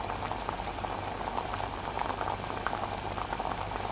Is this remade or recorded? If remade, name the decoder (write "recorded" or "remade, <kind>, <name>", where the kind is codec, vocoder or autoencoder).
recorded